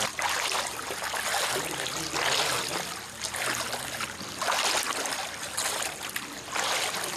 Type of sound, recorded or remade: recorded